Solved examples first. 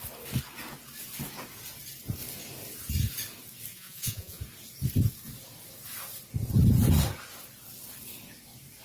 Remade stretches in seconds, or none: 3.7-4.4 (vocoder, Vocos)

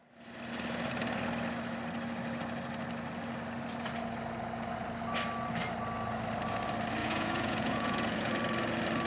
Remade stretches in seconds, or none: 7.0-8.3 (vocoder, Vocos)

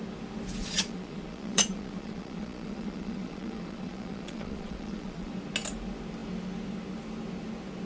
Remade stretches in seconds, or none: 0.6-5.3 (vocoder, Vocos)